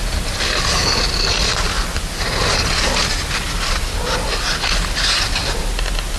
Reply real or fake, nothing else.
real